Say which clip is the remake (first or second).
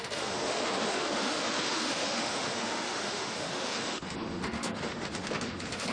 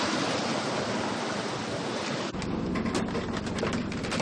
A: first